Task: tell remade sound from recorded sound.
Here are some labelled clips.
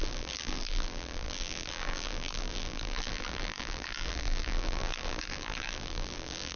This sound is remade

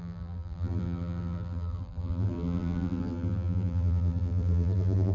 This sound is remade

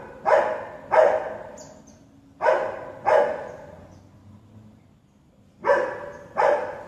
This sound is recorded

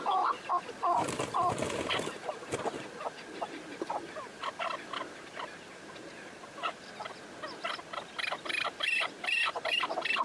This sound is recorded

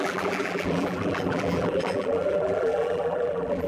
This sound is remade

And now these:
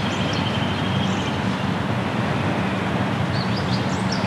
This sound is recorded